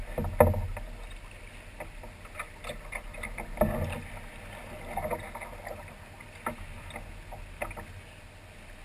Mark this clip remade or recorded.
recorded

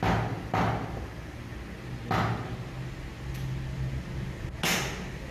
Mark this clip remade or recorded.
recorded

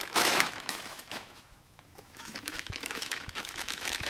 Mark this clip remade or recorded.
remade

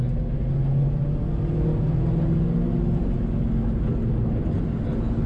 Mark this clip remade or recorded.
recorded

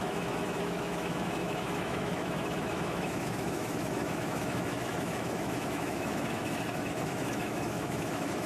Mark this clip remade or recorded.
remade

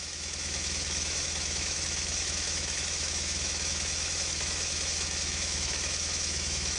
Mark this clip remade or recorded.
remade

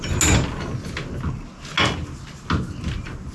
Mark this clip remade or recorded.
recorded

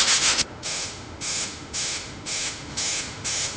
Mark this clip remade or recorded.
remade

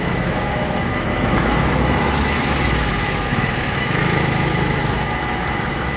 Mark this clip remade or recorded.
remade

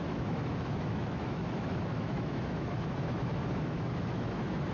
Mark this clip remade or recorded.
remade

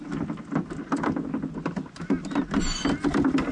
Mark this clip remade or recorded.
recorded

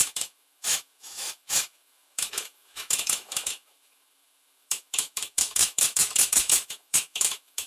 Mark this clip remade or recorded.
remade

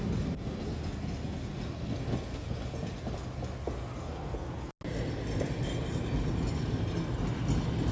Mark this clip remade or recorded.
recorded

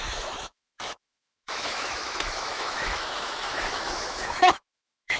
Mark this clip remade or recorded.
remade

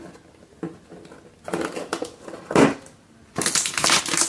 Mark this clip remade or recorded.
recorded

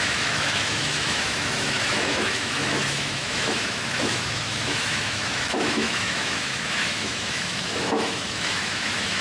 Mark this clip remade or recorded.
remade